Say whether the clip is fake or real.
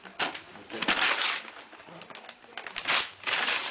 real